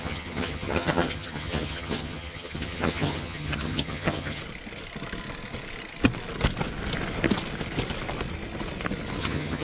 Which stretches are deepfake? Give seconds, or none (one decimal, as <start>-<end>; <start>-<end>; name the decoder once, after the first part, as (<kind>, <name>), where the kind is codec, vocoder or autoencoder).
0.0-4.4 (vocoder, HiFi-GAN); 9.2-9.6